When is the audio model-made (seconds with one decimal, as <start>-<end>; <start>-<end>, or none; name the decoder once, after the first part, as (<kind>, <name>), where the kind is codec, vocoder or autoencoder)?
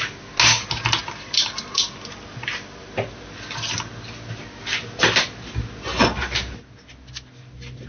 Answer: 1.0-2.9 (vocoder, BigVGAN v2)